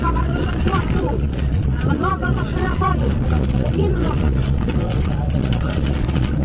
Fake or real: fake